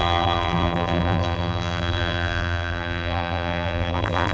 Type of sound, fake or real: fake